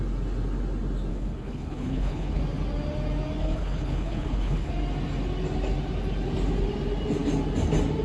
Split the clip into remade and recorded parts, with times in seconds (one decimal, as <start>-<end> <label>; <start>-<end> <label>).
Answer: 0.0-1.1 recorded; 1.1-2.4 remade; 2.4-3.4 recorded; 3.4-4.7 remade; 4.7-8.0 recorded